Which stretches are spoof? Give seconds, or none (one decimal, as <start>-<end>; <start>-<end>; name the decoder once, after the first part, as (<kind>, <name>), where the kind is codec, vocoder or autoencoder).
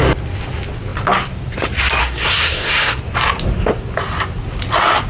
2.0-3.0 (codec, SNAC)